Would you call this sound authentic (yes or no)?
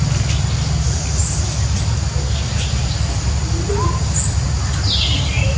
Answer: yes